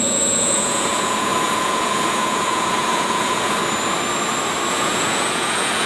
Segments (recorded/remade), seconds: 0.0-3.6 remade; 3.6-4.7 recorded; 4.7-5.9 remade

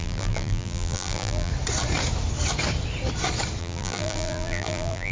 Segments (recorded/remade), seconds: 0.0-1.5 remade; 1.5-3.6 recorded; 3.6-5.1 remade

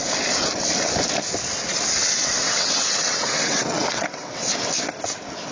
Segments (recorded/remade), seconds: 0.0-2.0 recorded; 2.0-4.5 remade; 4.5-5.5 recorded

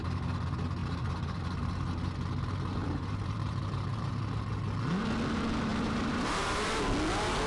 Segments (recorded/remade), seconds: 0.0-0.8 recorded; 0.8-1.4 remade; 1.4-2.8 recorded; 2.8-4.1 remade; 4.1-5.7 recorded; 5.7-6.6 remade; 6.6-7.5 recorded

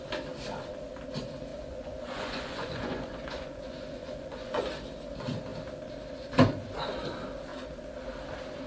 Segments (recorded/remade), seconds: 0.0-1.5 recorded; 1.5-4.6 remade; 4.6-8.7 recorded

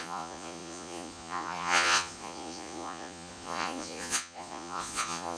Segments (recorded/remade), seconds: 0.0-5.4 remade